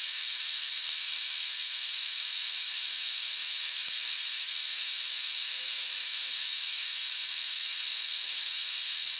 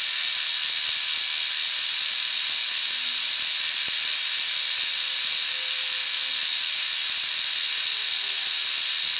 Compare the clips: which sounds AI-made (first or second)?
first